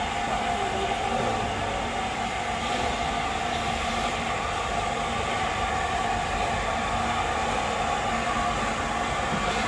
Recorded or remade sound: recorded